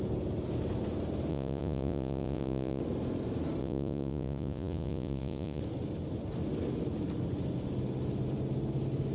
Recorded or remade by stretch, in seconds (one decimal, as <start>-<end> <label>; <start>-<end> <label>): 0.0-1.3 recorded; 1.3-2.8 remade; 2.8-3.6 recorded; 3.6-5.6 remade; 5.6-9.1 recorded